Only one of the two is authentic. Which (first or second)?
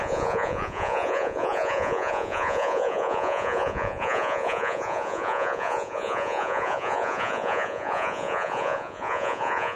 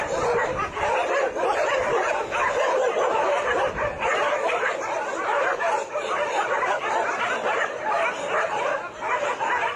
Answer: second